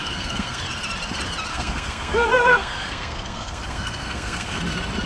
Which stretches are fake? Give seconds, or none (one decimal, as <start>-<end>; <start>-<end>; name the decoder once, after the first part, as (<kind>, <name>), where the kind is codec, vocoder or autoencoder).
0.0-0.6 (codec, SNAC); 1.5-4.6